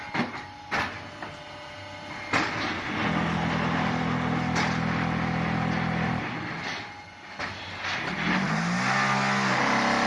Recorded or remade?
recorded